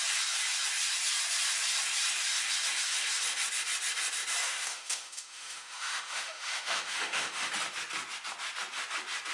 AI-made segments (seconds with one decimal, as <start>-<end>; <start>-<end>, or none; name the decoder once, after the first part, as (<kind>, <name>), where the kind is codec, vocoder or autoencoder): 4.4-7.5 (autoencoder, DAC-VAE)